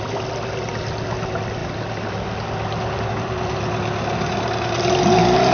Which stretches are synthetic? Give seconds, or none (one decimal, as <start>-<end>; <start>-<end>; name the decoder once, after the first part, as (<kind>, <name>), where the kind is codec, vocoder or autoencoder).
none